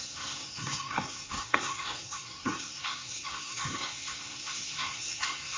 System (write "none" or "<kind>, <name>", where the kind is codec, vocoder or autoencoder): codec, SNAC